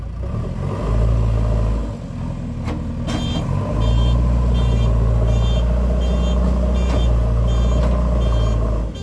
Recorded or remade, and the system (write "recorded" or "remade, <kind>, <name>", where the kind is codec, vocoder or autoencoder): recorded